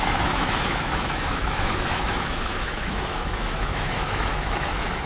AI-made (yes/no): yes